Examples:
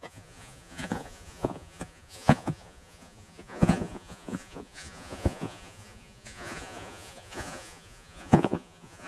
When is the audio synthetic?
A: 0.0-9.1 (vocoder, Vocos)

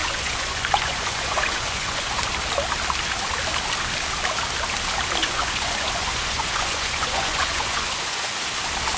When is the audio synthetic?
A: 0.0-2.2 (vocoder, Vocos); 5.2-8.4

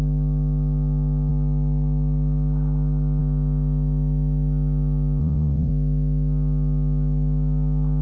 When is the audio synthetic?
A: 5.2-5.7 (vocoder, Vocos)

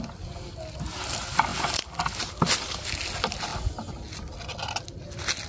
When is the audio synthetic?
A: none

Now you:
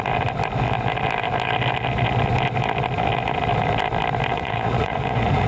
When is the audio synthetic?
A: 4.3-5.5 (vocoder, Vocos)

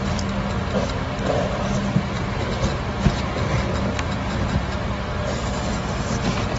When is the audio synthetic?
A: none